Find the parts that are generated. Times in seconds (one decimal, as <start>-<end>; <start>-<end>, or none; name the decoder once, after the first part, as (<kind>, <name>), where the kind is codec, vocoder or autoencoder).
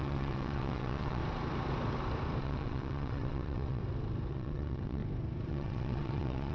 0.0-1.2 (vocoder, WaveNeXt); 2.4-3.8; 4.3-5.0; 5.5-6.5